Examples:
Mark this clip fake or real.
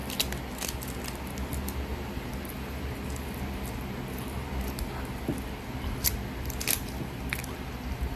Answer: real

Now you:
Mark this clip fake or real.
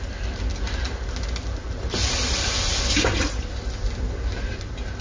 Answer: real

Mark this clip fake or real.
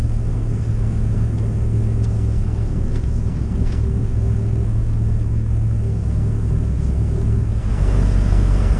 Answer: fake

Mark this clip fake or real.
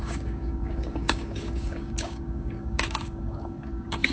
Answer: fake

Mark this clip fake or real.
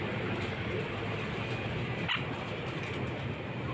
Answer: real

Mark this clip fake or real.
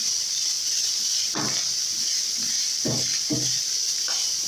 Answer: real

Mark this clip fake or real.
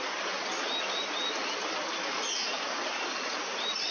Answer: real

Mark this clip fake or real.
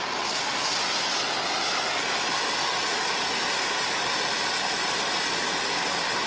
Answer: real